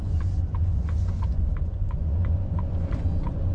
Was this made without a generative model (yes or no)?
no